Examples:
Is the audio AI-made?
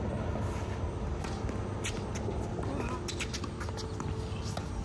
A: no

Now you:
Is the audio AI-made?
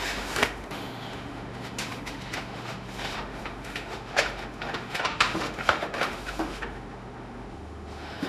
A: yes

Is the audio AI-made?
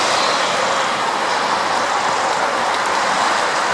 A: no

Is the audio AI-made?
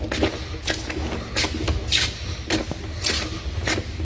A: no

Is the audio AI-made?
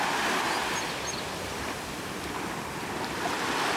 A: no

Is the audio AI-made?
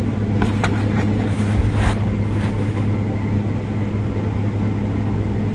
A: no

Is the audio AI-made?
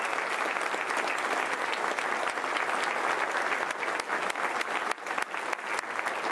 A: no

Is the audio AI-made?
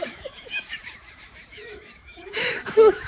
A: yes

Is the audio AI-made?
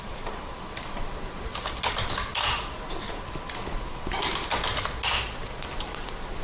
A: no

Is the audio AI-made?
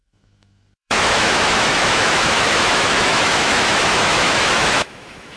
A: yes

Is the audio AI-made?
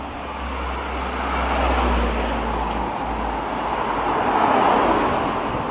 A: no